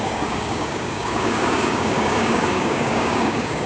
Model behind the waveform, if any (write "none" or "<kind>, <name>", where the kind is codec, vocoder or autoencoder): codec, DAC